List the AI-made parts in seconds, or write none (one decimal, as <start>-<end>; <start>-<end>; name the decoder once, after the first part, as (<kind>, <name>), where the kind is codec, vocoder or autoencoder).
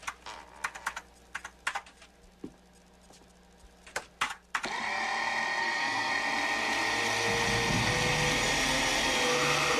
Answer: 5.6-6.1 (codec, SNAC)